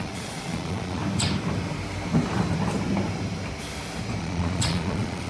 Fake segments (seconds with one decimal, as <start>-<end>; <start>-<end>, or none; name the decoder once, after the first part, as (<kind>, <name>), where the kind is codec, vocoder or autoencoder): 0.0-1.0 (vocoder, Vocos); 4.2-5.3

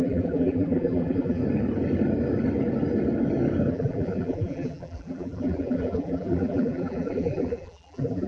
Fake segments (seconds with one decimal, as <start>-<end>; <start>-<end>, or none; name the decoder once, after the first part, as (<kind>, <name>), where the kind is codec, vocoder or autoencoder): 0.0-1.4 (vocoder, BigVGAN v2); 3.7-8.3

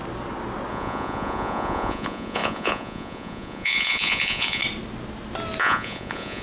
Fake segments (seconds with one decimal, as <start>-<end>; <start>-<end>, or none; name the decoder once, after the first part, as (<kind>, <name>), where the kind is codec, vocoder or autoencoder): 0.7-4.6 (vocoder, Vocos); 5.6-6.4

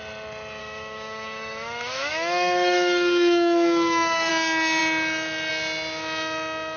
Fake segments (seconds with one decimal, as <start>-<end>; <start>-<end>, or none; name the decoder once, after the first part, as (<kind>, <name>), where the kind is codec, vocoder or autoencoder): 0.6-4.3 (autoencoder, DAC-VAE)

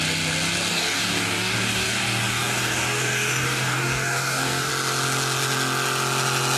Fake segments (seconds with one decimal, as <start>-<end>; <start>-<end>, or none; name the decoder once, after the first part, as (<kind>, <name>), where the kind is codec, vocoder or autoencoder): 0.7-4.7 (codec, DAC)

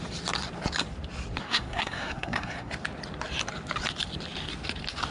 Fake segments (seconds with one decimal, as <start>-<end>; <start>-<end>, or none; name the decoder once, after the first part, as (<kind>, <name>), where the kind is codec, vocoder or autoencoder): 1.4-2.7 (codec, SNAC)